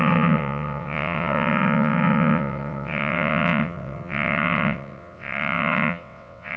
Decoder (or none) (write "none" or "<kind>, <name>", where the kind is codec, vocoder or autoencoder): vocoder, WaveNeXt